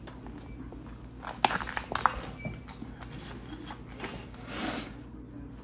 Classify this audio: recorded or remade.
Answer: recorded